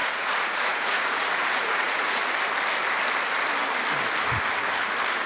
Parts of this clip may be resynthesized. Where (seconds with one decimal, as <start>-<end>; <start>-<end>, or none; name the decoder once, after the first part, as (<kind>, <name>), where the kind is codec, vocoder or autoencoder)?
0.0-2.2 (vocoder, Vocos)